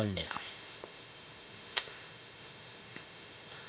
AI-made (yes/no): yes